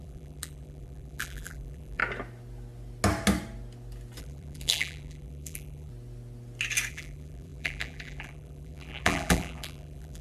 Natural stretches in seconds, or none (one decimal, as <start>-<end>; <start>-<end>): 2.0-4.2; 5.9-6.9

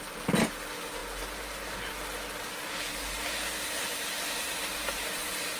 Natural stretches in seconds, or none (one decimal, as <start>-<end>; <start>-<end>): 0.0-2.9

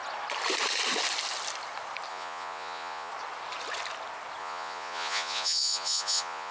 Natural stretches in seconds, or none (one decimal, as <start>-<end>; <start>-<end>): 0.0-2.1; 3.1-4.4

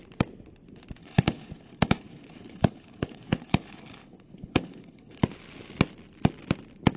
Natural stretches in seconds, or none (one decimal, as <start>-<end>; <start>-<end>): 0.0-1.0; 5.2-7.0

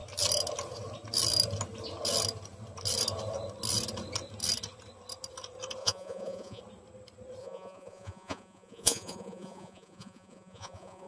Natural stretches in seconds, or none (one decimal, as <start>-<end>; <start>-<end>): 0.0-5.8; 6.6-7.4

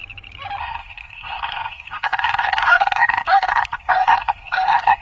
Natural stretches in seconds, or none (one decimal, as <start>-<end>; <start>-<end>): 0.0-0.6

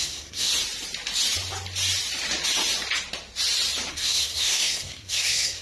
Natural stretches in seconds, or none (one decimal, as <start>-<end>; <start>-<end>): 0.5-3.9

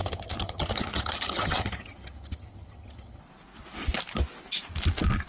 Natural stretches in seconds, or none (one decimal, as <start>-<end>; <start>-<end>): 3.2-5.3